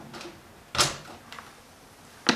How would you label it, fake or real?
real